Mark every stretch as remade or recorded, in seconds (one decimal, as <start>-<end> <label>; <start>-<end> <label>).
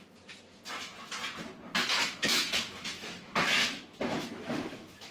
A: 0.0-1.9 recorded; 1.9-5.1 remade